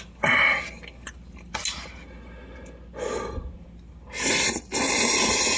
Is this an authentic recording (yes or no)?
yes